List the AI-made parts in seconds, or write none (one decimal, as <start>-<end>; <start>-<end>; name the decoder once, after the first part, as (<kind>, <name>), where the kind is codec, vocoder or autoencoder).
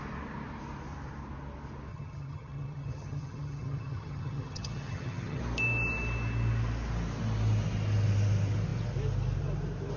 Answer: 1.9-5.4 (vocoder, HiFi-GAN)